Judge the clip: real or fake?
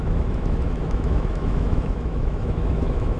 fake